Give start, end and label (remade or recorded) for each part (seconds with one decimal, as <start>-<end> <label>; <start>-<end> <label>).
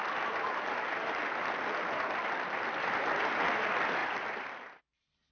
0.0-5.3 recorded